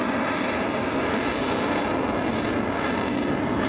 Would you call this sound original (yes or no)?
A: yes